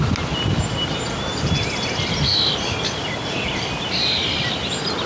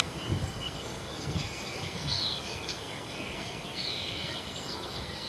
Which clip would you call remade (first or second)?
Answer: second